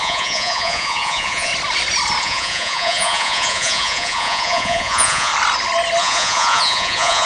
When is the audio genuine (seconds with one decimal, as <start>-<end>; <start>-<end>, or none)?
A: 1.5-2.2; 5.3-6.0